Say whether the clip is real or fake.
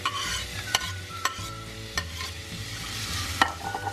real